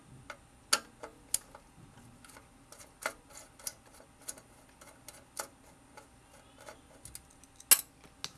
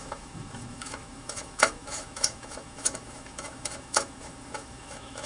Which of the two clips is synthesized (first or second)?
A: second